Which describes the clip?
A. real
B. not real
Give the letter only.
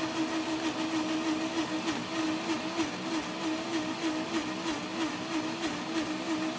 A